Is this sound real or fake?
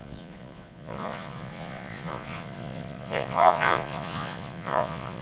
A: fake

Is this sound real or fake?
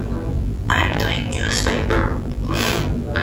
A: fake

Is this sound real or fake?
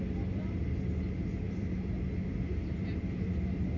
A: real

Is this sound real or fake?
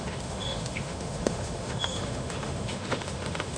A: fake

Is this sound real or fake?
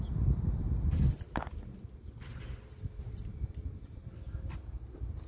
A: real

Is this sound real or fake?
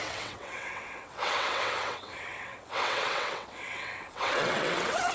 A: fake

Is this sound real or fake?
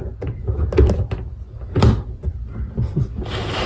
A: real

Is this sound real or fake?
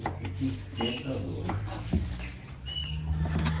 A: real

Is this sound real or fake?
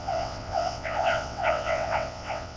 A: fake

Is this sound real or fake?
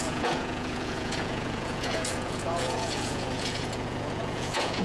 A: fake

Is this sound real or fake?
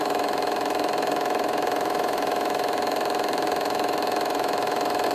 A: fake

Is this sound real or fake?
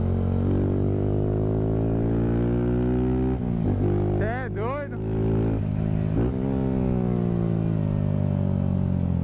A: real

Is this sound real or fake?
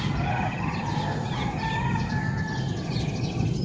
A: real